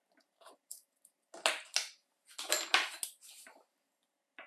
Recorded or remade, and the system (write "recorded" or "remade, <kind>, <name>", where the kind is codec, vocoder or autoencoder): recorded